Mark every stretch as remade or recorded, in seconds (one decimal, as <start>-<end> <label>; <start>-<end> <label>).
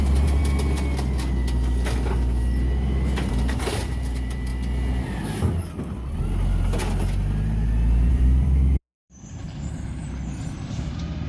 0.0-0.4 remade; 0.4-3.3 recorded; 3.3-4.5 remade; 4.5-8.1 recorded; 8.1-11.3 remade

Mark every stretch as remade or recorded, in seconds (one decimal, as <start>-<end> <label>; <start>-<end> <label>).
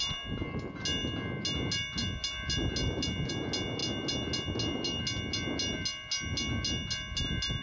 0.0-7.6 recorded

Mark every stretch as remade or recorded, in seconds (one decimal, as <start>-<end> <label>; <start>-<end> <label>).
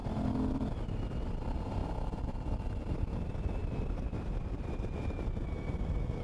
0.0-0.8 remade; 0.8-1.8 recorded; 1.8-2.5 remade; 2.5-3.6 recorded; 3.6-4.7 remade; 4.7-6.2 recorded